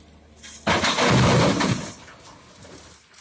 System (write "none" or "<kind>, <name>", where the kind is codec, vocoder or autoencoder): none